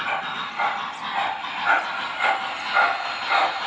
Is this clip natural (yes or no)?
yes